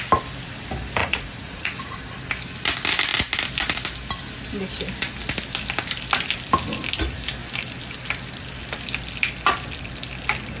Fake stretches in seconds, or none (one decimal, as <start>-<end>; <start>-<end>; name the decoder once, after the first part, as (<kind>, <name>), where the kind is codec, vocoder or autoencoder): 1.0-2.0 (vocoder, Vocos)